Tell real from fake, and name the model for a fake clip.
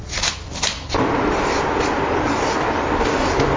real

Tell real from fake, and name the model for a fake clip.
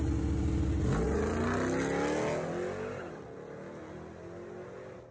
real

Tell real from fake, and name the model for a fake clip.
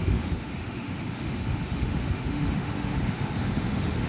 fake, autoencoder, DAC-VAE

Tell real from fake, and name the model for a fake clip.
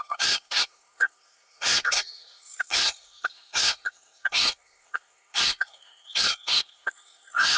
fake, codec, SNAC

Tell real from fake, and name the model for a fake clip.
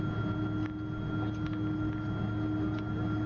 real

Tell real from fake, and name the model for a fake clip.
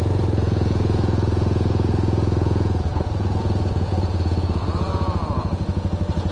fake, vocoder, Vocos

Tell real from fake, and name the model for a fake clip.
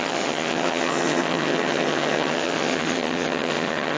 fake, vocoder, HiFi-GAN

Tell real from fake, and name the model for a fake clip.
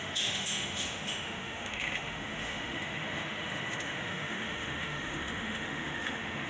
fake, autoencoder, DAC-VAE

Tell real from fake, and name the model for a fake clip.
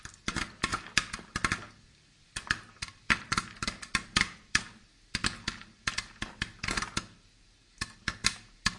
real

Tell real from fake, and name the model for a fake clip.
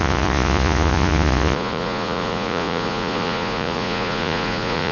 fake, vocoder, Vocos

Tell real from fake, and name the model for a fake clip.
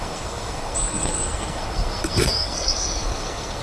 fake, codec, SNAC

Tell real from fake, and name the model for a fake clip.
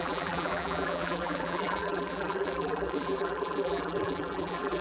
fake, vocoder, BigVGAN v2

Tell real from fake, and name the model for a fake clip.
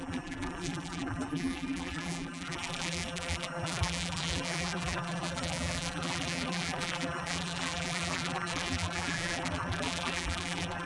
fake, vocoder, BigVGAN v2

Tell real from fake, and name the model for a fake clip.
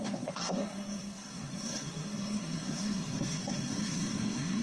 fake, codec, SNAC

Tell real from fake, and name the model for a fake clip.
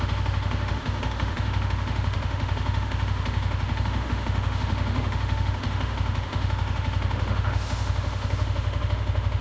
fake, autoencoder, DAC-VAE